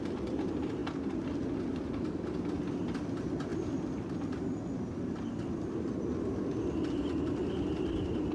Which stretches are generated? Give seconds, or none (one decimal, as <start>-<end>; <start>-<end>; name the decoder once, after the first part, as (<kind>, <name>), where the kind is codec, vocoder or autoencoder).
none